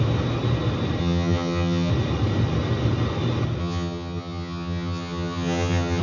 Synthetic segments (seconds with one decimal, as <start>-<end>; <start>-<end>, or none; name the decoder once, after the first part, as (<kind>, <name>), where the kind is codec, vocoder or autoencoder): 1.0-1.9 (vocoder, HiFi-GAN); 3.6-6.0